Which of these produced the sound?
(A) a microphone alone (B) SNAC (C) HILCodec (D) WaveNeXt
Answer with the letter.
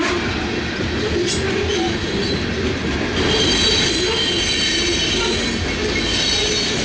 A